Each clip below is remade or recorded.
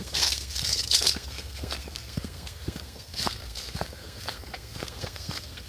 remade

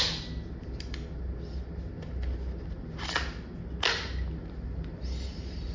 recorded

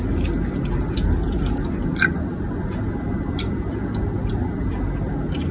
recorded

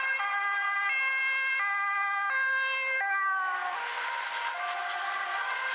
recorded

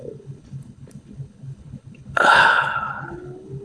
remade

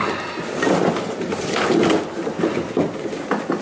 recorded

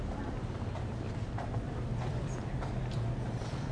remade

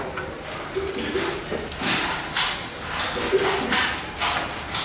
recorded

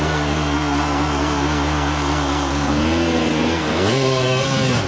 remade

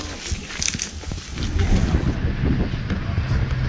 recorded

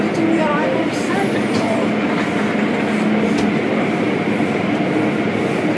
recorded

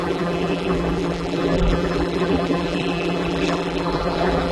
remade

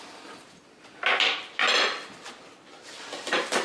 recorded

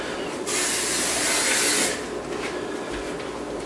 recorded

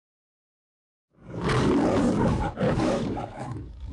remade